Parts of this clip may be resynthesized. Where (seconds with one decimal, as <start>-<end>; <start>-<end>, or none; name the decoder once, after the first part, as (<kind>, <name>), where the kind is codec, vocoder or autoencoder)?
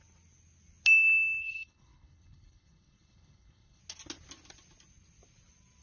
1.4-3.8 (codec, HILCodec)